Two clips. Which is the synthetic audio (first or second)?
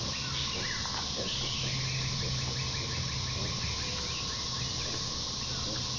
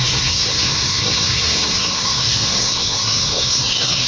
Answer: second